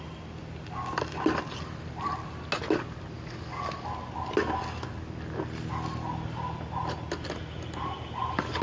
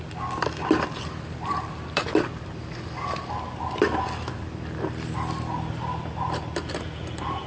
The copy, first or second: second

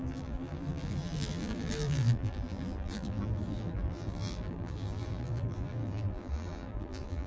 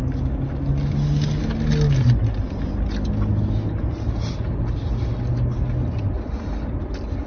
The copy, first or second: first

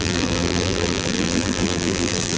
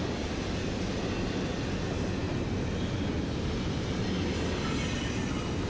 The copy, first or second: first